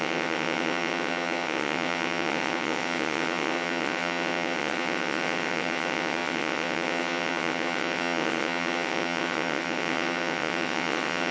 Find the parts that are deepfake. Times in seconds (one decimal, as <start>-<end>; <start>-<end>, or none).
0.0-11.3